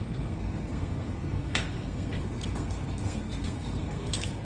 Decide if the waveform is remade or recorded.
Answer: remade